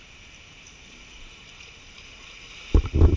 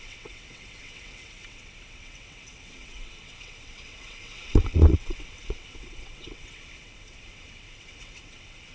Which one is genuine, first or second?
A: first